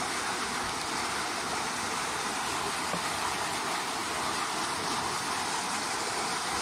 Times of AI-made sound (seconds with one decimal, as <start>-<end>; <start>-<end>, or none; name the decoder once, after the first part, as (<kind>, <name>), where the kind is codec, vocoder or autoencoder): 2.0-2.6 (vocoder, BigVGAN v2)